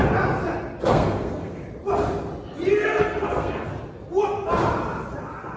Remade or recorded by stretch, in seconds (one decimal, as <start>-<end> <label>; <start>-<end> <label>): 0.0-0.9 recorded; 0.9-1.6 remade; 1.6-2.7 recorded; 2.7-3.7 remade; 3.7-5.6 recorded